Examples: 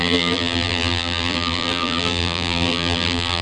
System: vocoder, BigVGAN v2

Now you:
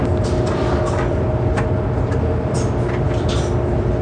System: none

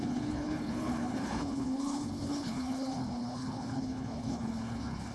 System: codec, HILCodec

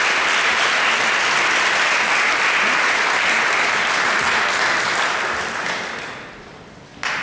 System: none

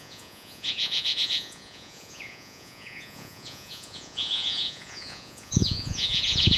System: vocoder, Vocos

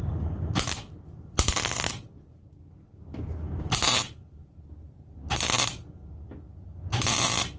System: none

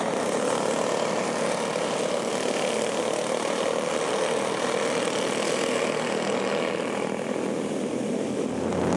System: none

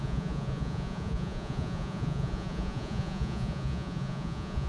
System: vocoder, Vocos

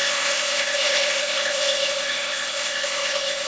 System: codec, ZipCodec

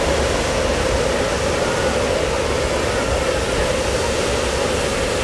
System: none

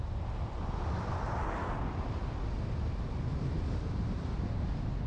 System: vocoder, BigVGAN v2